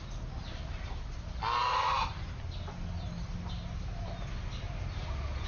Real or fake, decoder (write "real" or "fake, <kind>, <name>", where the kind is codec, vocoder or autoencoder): real